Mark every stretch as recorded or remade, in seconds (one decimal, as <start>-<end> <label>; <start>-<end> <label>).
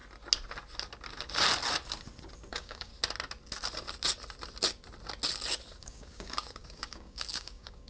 0.0-2.5 recorded; 2.5-2.9 remade; 2.9-5.8 recorded; 5.8-7.9 remade